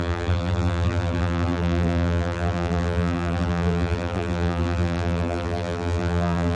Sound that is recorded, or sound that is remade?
remade